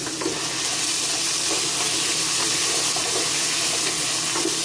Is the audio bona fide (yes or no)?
yes